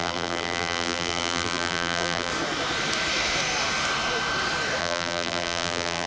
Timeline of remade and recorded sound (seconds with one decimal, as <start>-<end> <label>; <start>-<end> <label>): 0.0-2.3 remade; 2.3-4.8 recorded; 4.8-6.1 remade